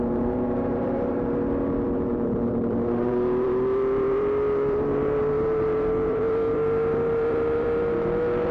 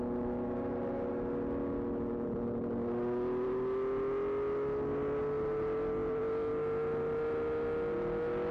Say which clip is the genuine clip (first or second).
second